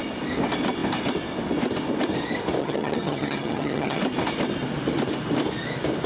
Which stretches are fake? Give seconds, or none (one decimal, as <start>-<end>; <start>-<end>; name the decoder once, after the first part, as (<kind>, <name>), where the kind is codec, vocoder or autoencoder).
2.6-4.0 (vocoder, HiFi-GAN)

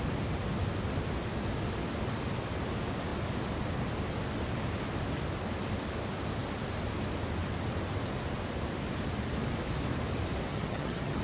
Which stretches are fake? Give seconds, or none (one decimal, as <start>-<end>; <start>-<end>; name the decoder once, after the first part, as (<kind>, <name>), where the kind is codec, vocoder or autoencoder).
10.5-11.2 (vocoder, HiFi-GAN)

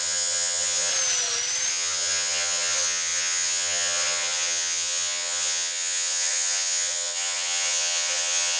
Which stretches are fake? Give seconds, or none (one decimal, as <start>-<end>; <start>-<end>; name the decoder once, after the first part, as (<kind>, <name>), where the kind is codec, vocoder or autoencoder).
0.0-0.9 (vocoder, HiFi-GAN); 1.7-8.6

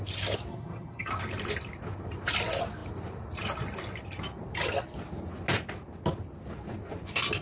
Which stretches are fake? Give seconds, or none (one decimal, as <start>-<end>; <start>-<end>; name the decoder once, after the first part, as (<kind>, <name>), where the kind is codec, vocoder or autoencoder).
0.5-1.1 (vocoder, HiFi-GAN)

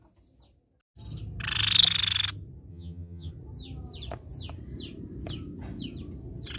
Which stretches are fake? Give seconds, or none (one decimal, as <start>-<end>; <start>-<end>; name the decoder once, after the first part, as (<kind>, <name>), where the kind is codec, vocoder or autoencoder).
2.7-3.3 (vocoder, HiFi-GAN)